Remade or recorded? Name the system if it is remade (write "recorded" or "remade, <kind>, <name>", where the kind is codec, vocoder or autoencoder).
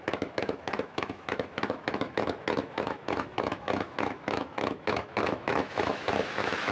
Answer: remade, autoencoder, DAC-VAE